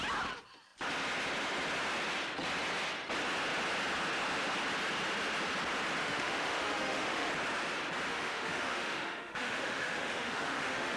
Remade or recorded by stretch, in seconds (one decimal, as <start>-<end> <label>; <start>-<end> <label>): 0.0-6.0 recorded; 6.0-7.3 remade; 7.3-8.1 recorded; 8.1-11.0 remade

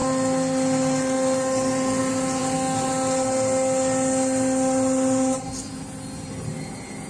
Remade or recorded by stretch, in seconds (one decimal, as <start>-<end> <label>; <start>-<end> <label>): 0.0-7.1 recorded

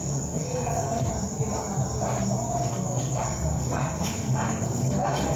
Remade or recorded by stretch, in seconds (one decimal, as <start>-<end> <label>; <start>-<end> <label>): 0.0-1.1 remade; 1.1-2.7 recorded; 2.7-5.4 remade

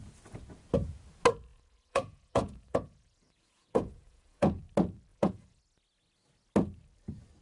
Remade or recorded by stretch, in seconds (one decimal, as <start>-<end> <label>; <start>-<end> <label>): 0.0-1.5 recorded; 1.5-4.6 remade; 4.6-5.1 recorded; 5.1-5.6 remade; 5.6-7.4 recorded

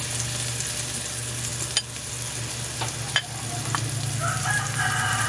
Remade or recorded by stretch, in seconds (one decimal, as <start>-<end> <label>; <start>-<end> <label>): 0.0-4.4 recorded; 4.4-5.3 remade